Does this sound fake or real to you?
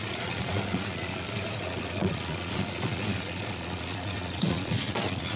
fake